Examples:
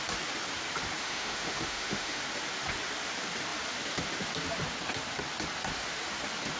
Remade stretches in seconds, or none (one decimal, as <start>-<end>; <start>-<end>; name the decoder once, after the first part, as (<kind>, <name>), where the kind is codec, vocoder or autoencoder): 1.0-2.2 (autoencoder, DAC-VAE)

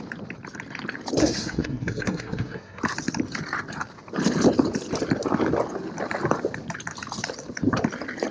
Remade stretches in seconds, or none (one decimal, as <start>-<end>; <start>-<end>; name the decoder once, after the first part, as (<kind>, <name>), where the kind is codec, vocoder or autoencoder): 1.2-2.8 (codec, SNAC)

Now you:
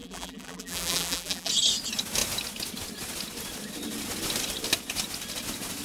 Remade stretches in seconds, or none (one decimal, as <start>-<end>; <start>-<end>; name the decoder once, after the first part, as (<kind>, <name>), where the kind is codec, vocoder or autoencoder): 0.0-1.5 (vocoder, BigVGAN v2)